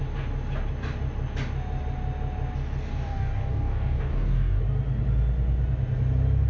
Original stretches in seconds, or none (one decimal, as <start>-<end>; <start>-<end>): 0.0-2.9; 4.6-6.5